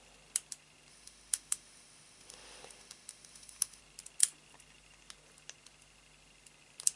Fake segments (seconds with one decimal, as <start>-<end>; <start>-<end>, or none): 0.9-3.8